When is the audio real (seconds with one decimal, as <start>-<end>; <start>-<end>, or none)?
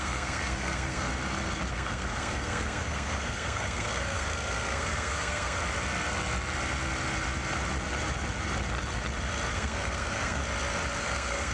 1.1-1.7; 5.6-9.5; 10.4-11.0